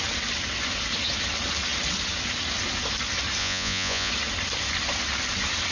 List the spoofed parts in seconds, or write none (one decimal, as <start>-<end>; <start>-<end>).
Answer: 3.4-4.1